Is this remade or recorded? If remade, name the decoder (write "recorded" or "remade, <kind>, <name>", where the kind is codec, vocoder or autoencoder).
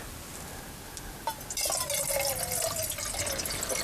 recorded